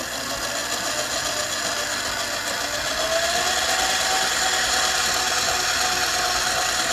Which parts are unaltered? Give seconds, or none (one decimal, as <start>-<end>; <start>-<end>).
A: 0.0-6.9